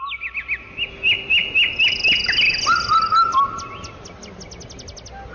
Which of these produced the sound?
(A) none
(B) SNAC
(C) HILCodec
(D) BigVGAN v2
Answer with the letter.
A